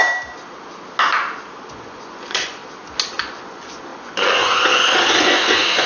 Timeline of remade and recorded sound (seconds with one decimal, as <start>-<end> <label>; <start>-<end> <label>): 0.0-1.7 recorded; 1.7-2.6 remade; 2.6-3.1 recorded; 3.1-5.9 remade

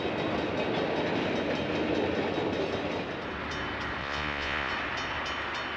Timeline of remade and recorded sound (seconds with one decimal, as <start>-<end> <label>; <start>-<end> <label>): 0.0-4.0 recorded; 4.0-4.7 remade; 4.7-5.8 recorded